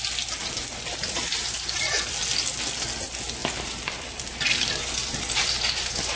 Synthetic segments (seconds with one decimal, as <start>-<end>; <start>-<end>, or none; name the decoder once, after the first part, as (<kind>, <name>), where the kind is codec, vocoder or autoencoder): 0.4-2.2 (vocoder, BigVGAN v2); 3.4-6.2